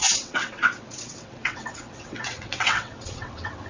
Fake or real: fake